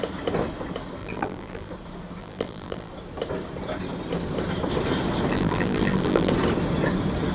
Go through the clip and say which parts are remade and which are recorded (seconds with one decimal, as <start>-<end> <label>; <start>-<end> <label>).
0.0-1.0 recorded; 1.0-1.7 remade; 1.7-2.2 recorded; 2.2-2.9 remade; 2.9-5.3 recorded; 5.3-6.3 remade; 6.3-7.3 recorded